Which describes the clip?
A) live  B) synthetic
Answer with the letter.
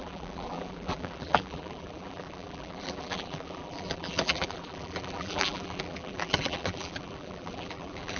B